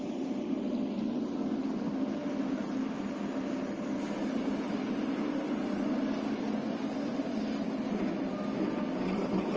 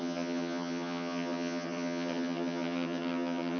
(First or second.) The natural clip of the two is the first